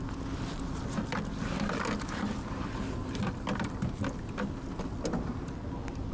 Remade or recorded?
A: recorded